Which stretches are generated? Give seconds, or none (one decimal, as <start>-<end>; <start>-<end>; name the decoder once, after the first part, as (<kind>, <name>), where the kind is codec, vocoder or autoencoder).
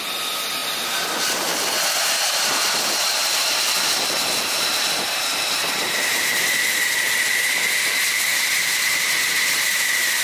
3.2-4.4 (vocoder, BigVGAN v2); 8.3-9.1